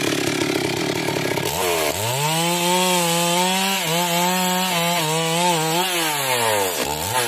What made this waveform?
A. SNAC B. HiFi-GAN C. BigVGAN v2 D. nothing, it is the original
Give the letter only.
D